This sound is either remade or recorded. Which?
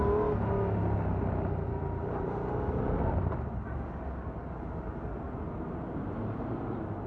recorded